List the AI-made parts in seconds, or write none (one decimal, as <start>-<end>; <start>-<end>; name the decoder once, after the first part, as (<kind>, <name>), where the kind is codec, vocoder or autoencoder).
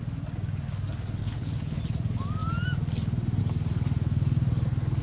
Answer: 1.2-1.8 (codec, HILCodec)